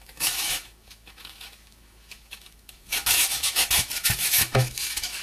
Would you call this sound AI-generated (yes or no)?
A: yes